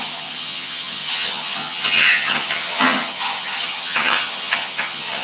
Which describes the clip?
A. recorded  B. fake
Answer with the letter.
B